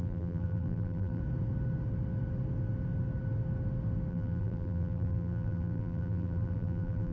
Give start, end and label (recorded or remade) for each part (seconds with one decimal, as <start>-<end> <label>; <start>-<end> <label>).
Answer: 0.0-1.2 remade; 1.2-4.1 recorded; 4.1-7.1 remade